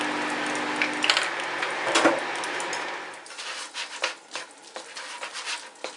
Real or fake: real